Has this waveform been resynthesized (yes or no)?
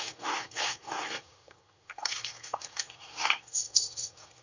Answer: yes